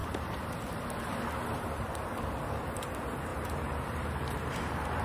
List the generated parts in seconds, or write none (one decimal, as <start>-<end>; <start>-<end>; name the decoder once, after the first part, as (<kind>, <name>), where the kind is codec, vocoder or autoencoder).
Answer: 0.0-1.9 (vocoder, BigVGAN v2); 3.3-5.0